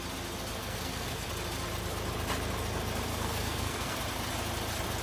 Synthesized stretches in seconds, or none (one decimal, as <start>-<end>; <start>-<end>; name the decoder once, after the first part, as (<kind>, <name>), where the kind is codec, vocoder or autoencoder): 0.6-1.3 (codec, SNAC); 3.1-4.0